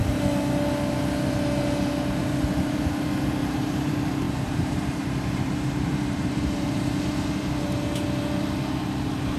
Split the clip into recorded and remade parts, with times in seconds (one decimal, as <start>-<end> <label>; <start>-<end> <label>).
0.0-3.4 recorded; 3.4-7.2 remade; 7.2-9.4 recorded

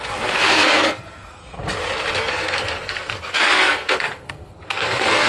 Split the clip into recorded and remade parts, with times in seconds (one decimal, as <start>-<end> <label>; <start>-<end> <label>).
0.0-1.4 remade; 1.4-2.1 recorded; 2.1-5.3 remade